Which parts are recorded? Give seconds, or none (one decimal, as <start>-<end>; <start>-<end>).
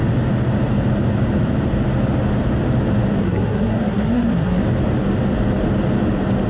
0.0-3.2; 4.6-6.5